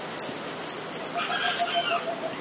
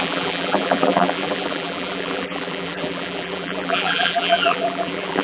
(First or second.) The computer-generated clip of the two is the second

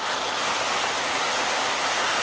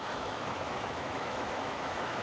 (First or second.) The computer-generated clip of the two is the second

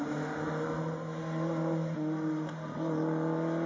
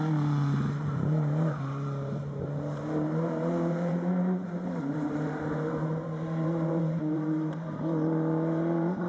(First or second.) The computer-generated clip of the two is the second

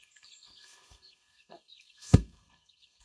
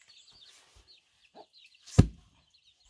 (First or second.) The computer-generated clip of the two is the first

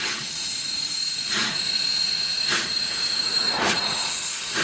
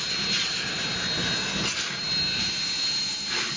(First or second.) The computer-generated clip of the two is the first